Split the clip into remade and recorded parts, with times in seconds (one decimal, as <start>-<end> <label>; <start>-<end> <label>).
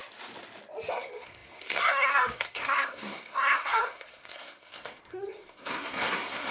0.0-0.9 recorded; 0.9-6.5 remade